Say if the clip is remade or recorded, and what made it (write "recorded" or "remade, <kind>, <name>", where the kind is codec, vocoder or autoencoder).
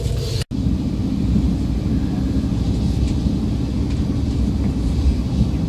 recorded